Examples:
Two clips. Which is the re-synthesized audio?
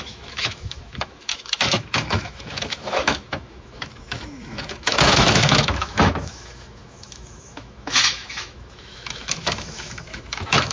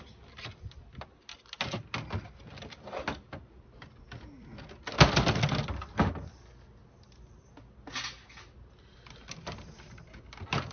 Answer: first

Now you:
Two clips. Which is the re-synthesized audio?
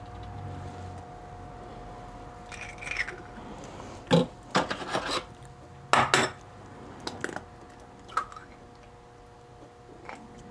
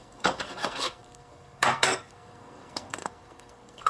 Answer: second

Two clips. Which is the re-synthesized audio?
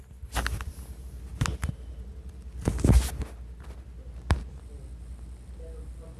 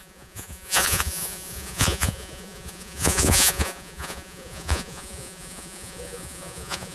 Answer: second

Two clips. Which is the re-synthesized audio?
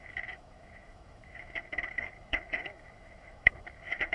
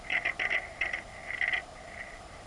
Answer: first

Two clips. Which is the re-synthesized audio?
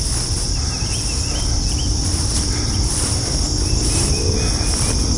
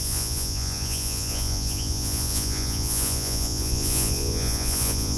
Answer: second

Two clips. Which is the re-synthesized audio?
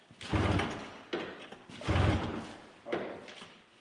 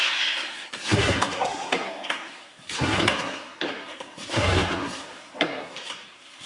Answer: second